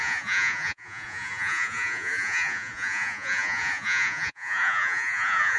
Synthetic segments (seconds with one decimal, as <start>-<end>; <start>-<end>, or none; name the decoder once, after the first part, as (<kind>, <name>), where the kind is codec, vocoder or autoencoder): 0.0-5.6 (vocoder, Vocos)